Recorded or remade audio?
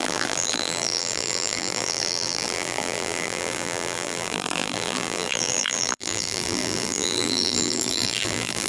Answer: remade